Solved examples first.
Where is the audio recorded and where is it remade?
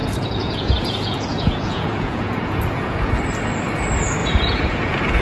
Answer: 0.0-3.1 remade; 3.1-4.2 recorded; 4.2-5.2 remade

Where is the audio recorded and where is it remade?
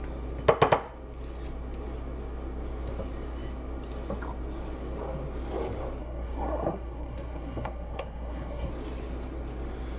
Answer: 0.0-6.0 recorded; 6.0-8.7 remade; 8.7-10.0 recorded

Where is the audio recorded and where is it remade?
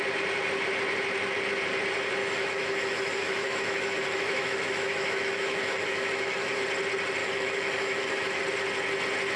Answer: 0.0-2.2 recorded; 2.2-6.6 remade; 6.6-7.2 recorded; 7.2-8.4 remade; 8.4-9.4 recorded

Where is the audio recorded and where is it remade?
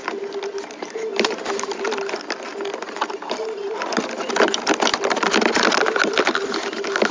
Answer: 0.0-7.1 recorded